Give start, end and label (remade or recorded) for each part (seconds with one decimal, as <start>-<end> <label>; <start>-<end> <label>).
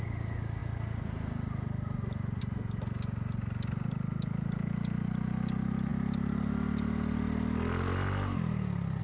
0.0-9.0 recorded